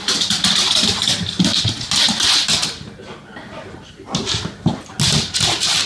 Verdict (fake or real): real